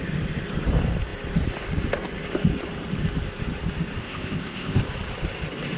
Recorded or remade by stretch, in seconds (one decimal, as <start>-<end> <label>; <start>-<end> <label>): 0.0-4.0 recorded; 4.0-4.8 remade; 4.8-5.8 recorded